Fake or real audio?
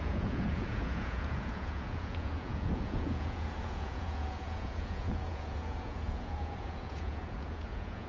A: fake